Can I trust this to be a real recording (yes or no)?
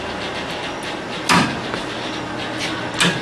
yes